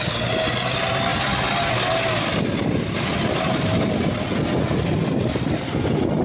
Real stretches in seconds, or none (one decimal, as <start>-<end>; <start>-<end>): 0.0-6.2